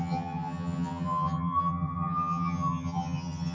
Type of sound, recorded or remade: remade